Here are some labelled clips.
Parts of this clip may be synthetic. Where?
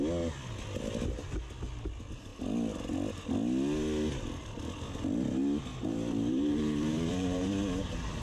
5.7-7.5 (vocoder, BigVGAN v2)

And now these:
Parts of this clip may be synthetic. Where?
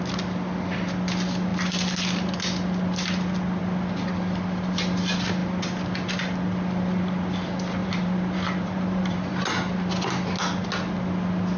7.8-9.3 (vocoder, BigVGAN v2)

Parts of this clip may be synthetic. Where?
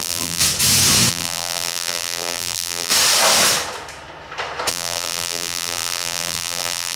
0.0-0.4 (vocoder, BigVGAN v2); 1.1-2.9; 4.7-7.0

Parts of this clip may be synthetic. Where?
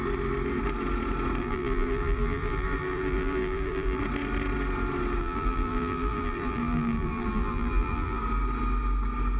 1.4-4.0 (vocoder, BigVGAN v2); 5.2-8.2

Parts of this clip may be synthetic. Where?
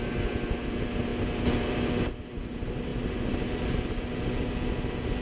none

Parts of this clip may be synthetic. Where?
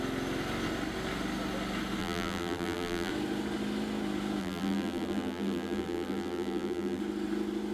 2.0-3.1 (vocoder, BigVGAN v2); 4.4-7.0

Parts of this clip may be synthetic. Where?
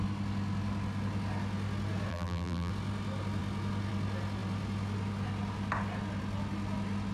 2.1-2.7 (vocoder, BigVGAN v2)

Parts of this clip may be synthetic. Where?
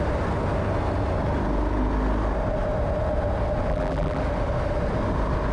3.7-4.2 (vocoder, BigVGAN v2)